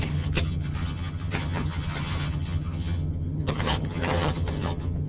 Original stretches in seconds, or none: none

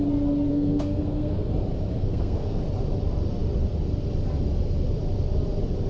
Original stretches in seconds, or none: 0.0-0.5; 1.5-1.9; 2.6-5.9

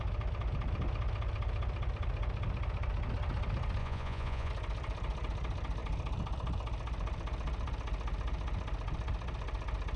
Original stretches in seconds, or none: 0.0-3.8; 4.5-10.0

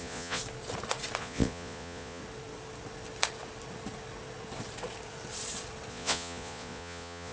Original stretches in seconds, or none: 0.4-1.2; 2.2-5.9